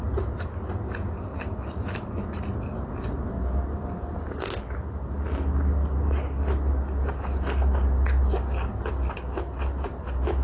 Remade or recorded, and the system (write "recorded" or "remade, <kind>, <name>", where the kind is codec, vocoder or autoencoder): recorded